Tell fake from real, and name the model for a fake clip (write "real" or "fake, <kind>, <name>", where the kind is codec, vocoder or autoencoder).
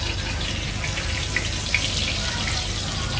real